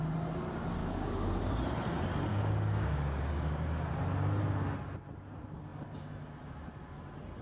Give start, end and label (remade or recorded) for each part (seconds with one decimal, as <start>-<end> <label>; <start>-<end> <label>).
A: 0.0-0.8 recorded; 0.8-1.4 remade; 1.4-2.3 recorded; 2.3-4.0 remade; 4.0-7.4 recorded